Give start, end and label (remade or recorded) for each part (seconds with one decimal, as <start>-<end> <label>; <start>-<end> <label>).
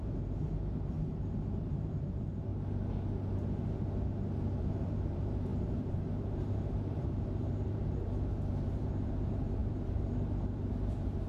0.0-2.5 remade; 2.5-4.6 recorded; 4.6-11.3 remade